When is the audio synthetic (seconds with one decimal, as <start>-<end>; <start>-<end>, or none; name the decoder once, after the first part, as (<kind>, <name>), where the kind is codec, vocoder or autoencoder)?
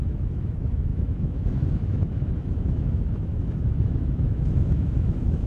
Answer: 0.0-5.5 (autoencoder, DAC-VAE)